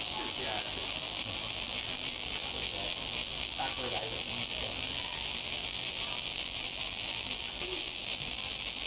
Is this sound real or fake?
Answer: fake